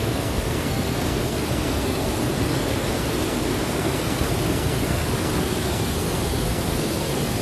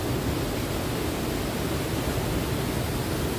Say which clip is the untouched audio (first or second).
second